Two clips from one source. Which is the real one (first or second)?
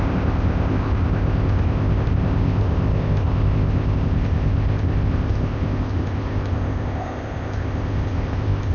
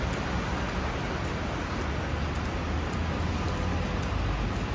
second